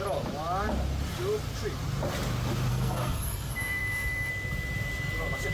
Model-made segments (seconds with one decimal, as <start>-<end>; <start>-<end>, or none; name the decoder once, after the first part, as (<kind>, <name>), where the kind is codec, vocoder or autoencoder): 2.7-4.3 (codec, SNAC)